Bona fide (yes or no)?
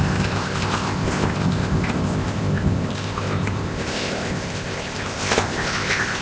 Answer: no